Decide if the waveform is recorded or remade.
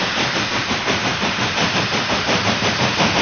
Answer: recorded